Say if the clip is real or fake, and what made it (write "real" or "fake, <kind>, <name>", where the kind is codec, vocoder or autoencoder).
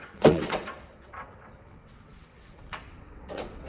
fake, vocoder, WaveNeXt